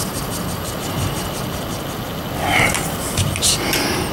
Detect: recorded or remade recorded